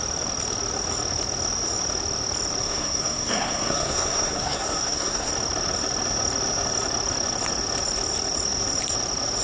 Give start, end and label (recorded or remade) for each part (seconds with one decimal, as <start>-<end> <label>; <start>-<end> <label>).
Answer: 0.0-2.6 recorded; 2.6-5.3 remade; 5.3-9.4 recorded